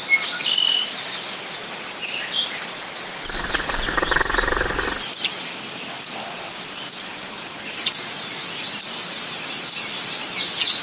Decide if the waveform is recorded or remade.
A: recorded